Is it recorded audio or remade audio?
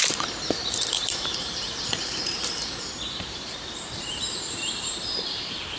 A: remade